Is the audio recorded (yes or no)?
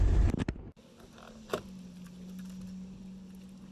yes